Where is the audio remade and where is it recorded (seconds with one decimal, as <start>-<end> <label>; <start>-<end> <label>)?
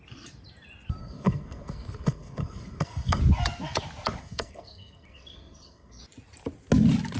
0.0-1.0 recorded; 1.0-3.2 remade; 3.2-4.2 recorded; 4.2-6.0 remade; 6.0-7.2 recorded